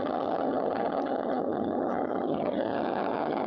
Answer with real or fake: fake